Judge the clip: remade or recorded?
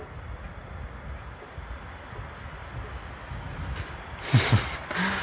recorded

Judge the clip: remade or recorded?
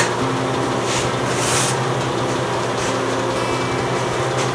recorded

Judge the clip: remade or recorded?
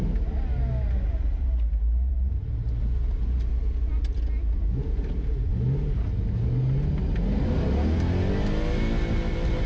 recorded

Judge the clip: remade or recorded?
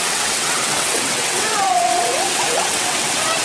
remade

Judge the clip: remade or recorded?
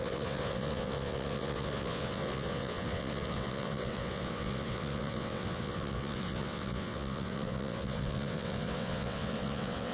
remade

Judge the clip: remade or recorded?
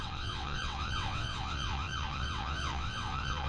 remade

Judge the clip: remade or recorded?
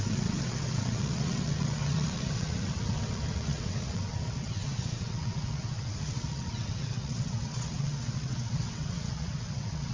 remade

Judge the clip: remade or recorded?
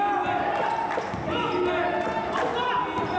recorded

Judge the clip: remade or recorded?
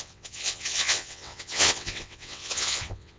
remade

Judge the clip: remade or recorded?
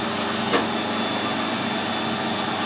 recorded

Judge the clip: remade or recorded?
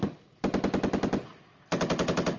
recorded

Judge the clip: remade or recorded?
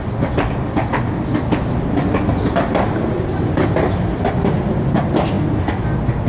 recorded